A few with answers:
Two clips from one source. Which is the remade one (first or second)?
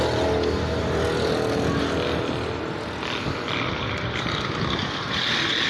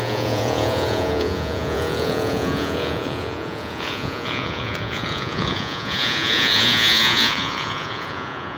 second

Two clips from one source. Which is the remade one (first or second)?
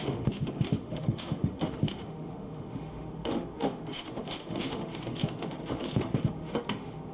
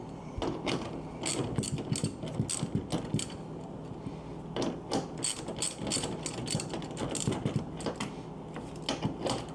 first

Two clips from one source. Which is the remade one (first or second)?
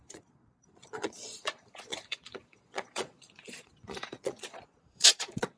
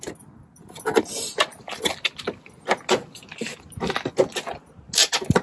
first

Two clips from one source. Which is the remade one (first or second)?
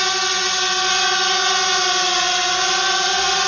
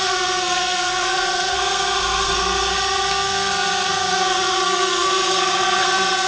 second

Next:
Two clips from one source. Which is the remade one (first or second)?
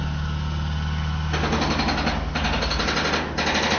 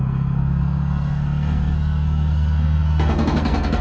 second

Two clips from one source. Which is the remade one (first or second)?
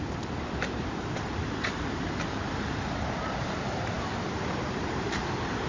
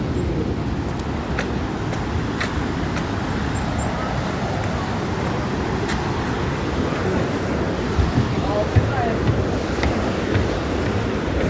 first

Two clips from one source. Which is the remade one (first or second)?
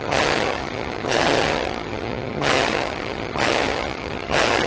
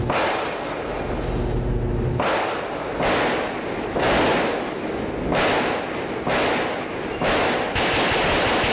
first